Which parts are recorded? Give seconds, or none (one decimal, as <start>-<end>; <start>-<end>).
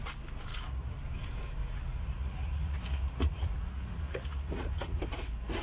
0.0-0.5; 1.0-1.6; 5.0-5.6